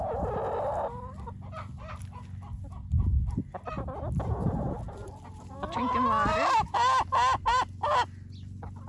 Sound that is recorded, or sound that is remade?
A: recorded